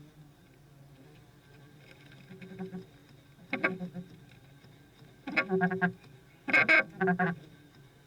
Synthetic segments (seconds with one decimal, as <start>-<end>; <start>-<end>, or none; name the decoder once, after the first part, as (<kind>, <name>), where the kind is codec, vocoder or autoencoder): none